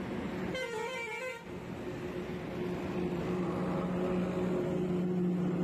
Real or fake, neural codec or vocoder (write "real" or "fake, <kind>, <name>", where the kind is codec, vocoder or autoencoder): real